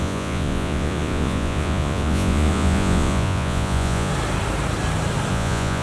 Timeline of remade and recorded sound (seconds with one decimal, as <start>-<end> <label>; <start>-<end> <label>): 0.0-4.1 remade; 4.1-5.3 recorded; 5.3-5.8 remade